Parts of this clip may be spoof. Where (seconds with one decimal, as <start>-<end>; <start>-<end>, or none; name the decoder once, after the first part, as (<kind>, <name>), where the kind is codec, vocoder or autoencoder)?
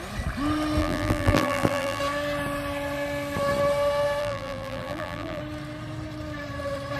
0.8-2.0 (vocoder, BigVGAN v2); 4.2-5.4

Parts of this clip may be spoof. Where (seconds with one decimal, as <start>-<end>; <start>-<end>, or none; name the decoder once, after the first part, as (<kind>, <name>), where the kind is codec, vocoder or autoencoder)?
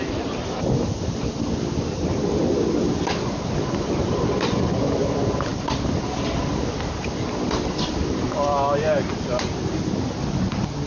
none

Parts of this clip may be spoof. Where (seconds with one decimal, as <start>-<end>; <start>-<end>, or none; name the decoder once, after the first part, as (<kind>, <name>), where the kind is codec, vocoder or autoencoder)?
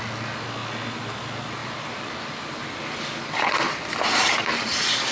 1.6-5.1 (vocoder, BigVGAN v2)